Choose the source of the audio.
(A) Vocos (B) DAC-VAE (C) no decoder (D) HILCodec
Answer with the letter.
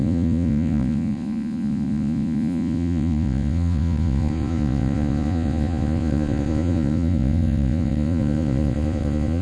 A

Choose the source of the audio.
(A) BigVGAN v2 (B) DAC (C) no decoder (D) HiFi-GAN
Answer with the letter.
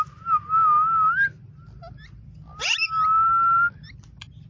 C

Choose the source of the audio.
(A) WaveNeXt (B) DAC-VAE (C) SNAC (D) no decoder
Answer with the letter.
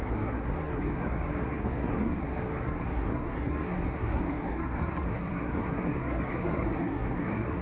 C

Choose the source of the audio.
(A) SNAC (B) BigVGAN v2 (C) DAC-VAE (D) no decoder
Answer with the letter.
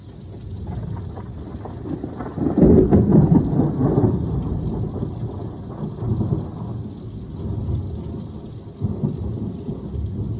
D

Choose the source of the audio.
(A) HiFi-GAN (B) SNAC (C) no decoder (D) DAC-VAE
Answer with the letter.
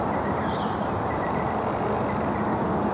C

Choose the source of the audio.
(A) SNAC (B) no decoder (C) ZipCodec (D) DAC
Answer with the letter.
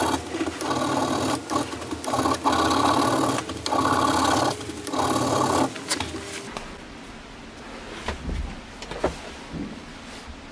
B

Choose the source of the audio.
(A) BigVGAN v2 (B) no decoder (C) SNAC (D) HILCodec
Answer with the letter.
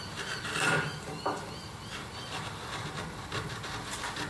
B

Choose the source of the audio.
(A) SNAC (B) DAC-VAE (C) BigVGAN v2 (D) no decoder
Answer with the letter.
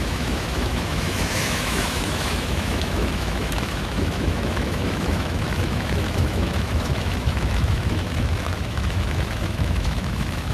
B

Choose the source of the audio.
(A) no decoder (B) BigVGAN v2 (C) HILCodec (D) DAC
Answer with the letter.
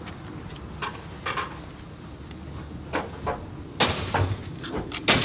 A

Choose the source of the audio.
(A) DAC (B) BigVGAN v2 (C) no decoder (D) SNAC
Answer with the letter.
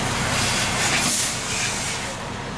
C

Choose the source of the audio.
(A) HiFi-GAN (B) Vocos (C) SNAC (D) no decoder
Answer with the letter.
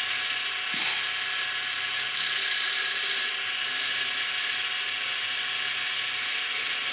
D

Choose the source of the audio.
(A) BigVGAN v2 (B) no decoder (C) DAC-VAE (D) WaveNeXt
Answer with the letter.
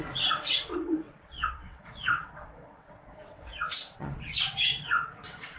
D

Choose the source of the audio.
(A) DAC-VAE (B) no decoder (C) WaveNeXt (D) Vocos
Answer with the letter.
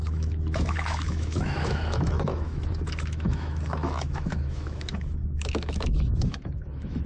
A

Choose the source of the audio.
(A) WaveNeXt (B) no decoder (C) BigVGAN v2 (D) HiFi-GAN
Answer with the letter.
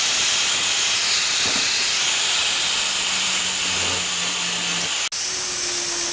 B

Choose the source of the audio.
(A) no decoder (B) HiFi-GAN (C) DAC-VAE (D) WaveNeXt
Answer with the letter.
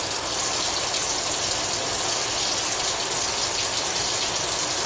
A